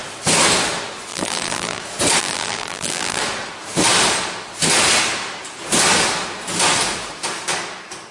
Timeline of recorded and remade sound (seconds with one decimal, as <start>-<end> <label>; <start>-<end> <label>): 0.0-1.1 recorded; 1.1-1.8 remade; 1.8-2.2 recorded; 2.2-3.2 remade; 3.2-8.1 recorded